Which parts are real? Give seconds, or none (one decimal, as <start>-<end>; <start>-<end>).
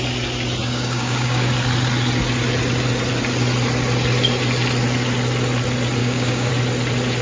0.0-0.6; 1.5-6.0; 6.5-7.2